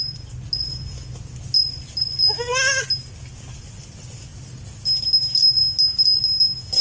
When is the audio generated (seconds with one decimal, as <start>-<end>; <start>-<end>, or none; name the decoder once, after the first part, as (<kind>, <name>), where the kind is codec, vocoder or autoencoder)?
none